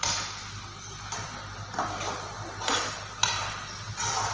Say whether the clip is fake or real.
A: real